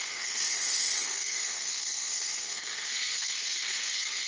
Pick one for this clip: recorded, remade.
remade